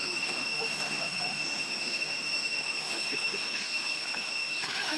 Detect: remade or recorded remade